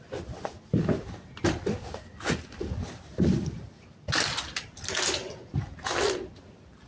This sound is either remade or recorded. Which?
recorded